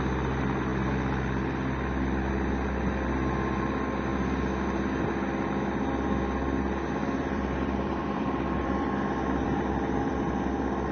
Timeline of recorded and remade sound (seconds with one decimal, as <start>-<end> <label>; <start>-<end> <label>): 0.0-7.0 recorded; 7.0-10.2 remade; 10.2-10.9 recorded

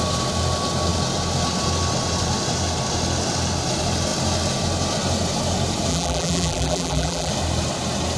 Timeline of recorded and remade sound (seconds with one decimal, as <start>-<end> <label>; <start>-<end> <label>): 0.0-5.9 recorded; 5.9-7.3 remade; 7.3-8.2 recorded

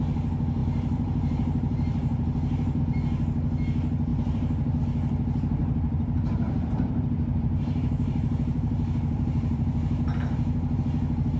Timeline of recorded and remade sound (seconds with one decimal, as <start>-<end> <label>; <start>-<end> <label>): 0.0-0.6 recorded; 0.6-2.8 remade; 2.8-4.1 recorded; 4.1-4.8 remade; 4.8-5.6 recorded; 5.6-10.8 remade; 10.8-11.4 recorded